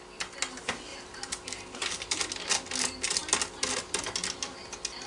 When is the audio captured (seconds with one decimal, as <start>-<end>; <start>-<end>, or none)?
0.0-0.9; 2.2-5.1